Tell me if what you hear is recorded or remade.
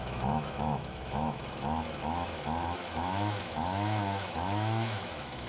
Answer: remade